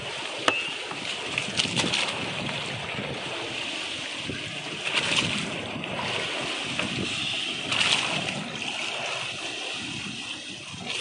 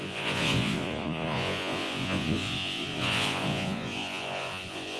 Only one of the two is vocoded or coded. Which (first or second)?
second